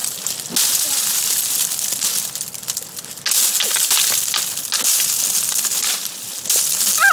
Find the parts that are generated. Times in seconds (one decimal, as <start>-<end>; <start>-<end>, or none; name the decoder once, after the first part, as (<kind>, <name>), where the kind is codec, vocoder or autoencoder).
none